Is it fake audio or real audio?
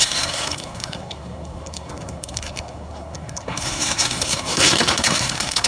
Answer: fake